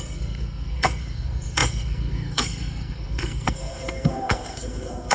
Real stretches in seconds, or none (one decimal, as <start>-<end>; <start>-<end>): none